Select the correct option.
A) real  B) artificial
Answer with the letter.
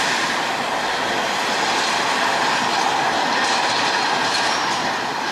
A